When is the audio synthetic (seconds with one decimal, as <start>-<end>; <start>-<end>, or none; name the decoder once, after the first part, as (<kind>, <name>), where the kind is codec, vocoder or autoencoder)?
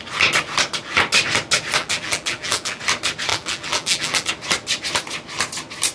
1.8-2.8 (vocoder, BigVGAN v2); 3.3-4.3